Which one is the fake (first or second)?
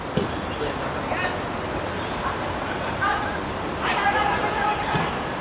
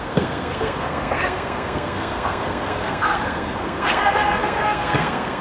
second